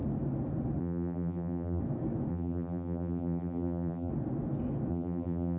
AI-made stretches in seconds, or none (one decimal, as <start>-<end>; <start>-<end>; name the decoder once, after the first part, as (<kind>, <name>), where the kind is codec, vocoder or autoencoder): 0.8-1.8 (vocoder, BigVGAN v2); 2.3-4.1; 4.9-5.6